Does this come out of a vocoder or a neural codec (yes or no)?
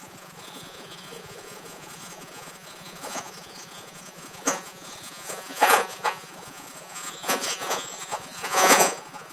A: yes